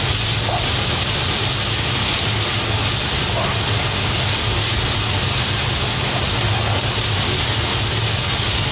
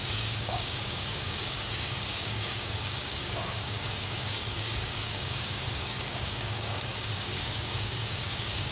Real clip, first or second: first